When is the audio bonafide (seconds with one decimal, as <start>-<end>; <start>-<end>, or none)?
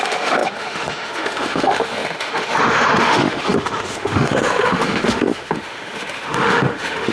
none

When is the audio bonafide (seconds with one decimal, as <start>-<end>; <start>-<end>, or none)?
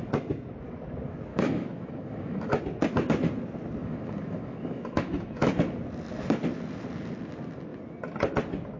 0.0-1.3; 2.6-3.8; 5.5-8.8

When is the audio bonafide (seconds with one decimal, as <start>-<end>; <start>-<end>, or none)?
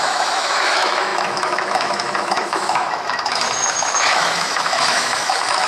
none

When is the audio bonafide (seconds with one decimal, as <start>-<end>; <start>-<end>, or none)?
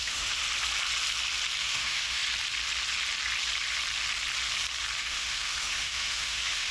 0.4-1.6; 2.2-5.0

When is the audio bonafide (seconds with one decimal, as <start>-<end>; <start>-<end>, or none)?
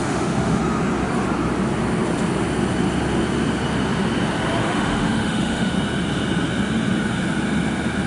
0.6-4.6; 5.7-8.1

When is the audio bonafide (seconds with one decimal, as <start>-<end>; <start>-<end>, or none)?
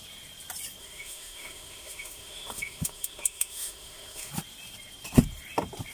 0.0-0.8; 4.3-5.9